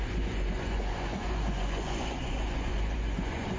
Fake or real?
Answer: fake